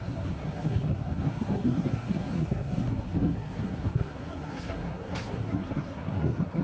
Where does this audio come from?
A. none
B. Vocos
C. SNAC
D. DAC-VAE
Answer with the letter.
C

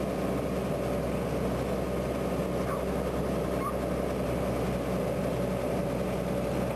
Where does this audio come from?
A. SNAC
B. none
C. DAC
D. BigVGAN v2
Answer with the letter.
B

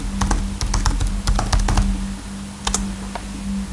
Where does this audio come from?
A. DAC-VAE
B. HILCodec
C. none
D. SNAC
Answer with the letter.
C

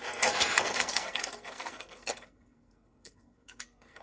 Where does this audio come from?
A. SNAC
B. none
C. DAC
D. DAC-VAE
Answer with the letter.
A